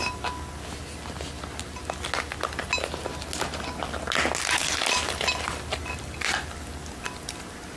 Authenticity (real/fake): real